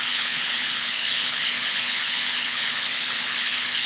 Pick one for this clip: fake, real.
fake